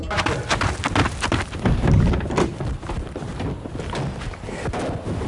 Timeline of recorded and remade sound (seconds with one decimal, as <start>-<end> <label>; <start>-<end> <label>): 0.0-5.3 recorded